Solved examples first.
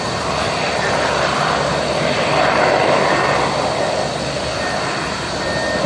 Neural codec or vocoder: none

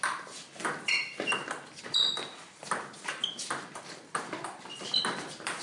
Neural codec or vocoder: none